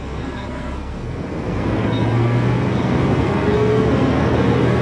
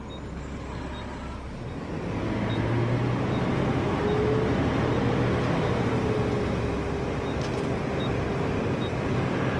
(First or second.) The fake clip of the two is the first